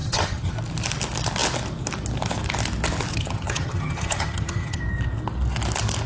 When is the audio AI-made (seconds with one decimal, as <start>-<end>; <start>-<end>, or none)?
0.0-0.5; 3.1-4.8